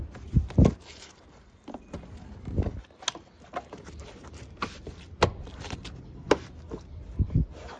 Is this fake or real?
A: real